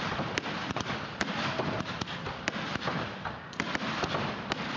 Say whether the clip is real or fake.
real